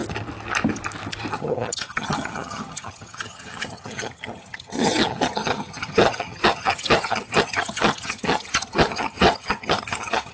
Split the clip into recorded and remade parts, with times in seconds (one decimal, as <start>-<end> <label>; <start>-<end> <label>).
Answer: 0.0-1.3 recorded; 1.3-10.3 remade